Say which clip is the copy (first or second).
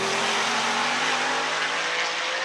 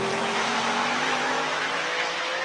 second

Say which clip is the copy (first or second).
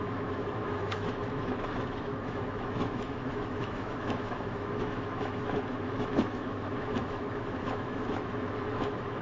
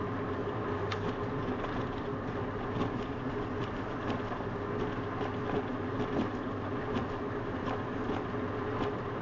first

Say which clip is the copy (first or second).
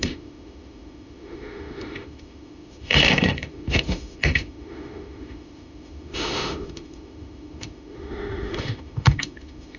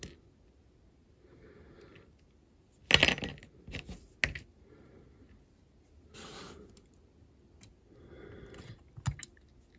first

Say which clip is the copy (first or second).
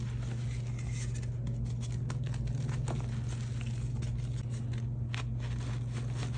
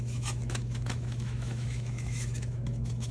second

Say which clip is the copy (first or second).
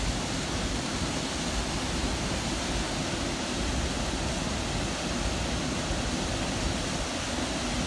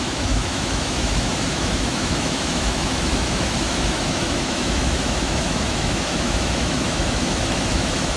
second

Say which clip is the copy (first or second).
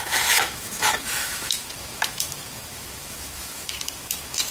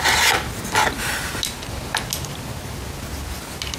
first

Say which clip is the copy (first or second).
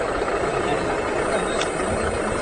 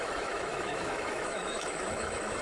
second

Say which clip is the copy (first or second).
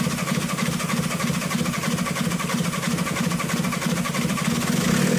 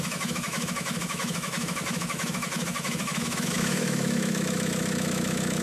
second